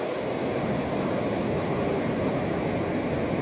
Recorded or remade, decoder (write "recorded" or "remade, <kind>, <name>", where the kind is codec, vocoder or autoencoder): recorded